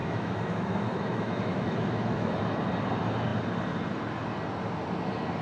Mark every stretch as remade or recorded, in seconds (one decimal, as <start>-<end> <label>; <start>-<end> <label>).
0.0-2.4 remade; 2.4-5.4 recorded